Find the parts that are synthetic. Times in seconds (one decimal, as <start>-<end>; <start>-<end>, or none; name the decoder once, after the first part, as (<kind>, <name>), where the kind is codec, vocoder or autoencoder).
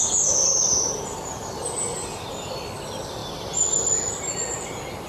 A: none